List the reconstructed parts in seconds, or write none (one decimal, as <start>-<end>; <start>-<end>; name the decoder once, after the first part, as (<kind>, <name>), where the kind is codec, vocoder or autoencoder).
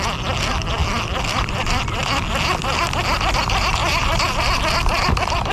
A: none